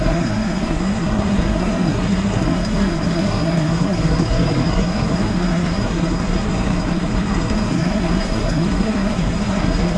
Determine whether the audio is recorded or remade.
remade